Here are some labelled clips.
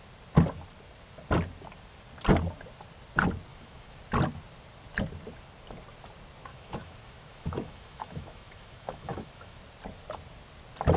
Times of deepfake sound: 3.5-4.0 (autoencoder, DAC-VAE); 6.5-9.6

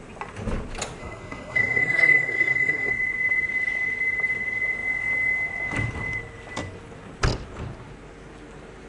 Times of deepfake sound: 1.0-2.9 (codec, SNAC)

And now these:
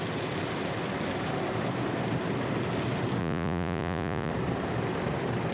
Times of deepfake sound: 3.2-4.3 (vocoder, Vocos)

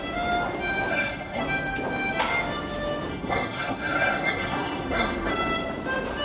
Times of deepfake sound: 0.9-1.4 (codec, SNAC); 3.1-5.3